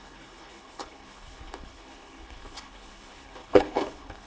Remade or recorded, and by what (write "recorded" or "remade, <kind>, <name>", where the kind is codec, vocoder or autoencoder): remade, codec, HILCodec